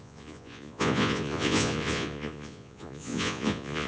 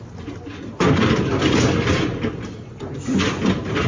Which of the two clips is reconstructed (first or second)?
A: first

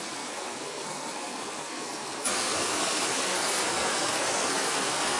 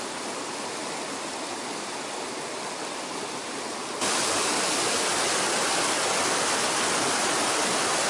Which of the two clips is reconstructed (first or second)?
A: first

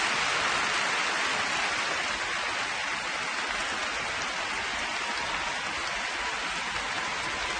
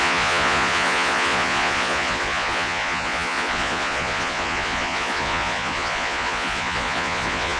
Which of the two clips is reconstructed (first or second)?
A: second